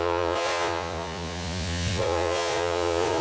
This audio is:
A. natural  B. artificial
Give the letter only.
B